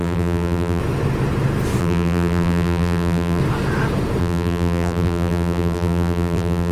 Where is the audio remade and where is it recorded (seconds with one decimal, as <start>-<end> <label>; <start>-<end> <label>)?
0.0-0.8 remade; 0.8-1.8 recorded; 1.8-3.4 remade; 3.4-4.2 recorded; 4.2-6.7 remade

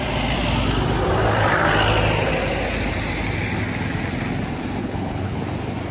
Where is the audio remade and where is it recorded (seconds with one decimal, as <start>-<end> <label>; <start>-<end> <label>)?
0.0-4.8 recorded; 4.8-5.4 remade; 5.4-5.9 recorded